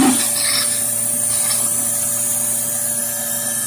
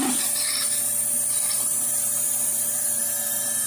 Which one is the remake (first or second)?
second